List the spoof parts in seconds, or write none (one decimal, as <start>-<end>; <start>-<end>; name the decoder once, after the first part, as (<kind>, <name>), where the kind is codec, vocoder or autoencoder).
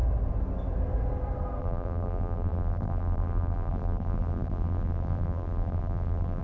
1.6-6.4 (vocoder, BigVGAN v2)